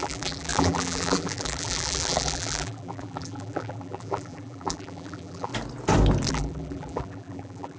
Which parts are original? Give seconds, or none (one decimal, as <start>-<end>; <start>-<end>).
5.5-6.3